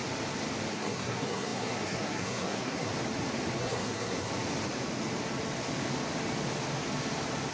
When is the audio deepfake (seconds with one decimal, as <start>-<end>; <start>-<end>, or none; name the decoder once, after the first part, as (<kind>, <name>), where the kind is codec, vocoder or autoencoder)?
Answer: 0.7-2.9 (codec, SNAC); 3.6-4.3